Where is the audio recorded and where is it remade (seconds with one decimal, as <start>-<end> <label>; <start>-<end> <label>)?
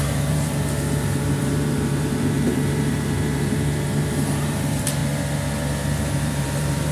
0.0-5.0 remade; 5.0-6.0 recorded; 6.0-6.9 remade